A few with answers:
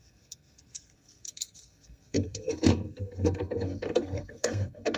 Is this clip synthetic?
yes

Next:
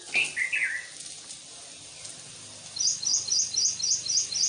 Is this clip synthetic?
no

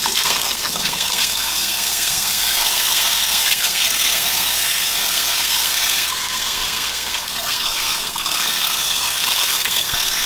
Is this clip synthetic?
yes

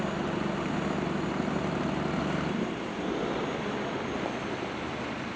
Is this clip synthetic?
no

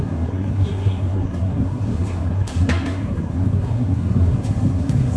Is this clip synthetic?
yes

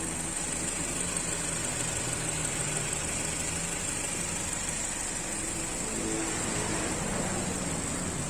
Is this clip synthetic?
no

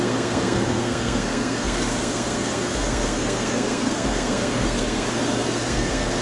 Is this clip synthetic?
yes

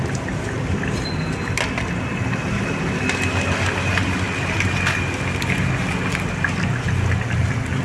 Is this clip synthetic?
no